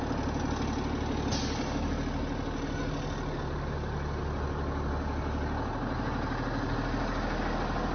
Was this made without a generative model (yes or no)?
yes